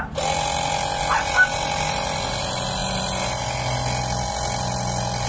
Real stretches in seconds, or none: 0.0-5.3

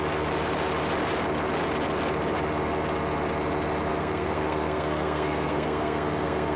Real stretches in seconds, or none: 0.0-3.9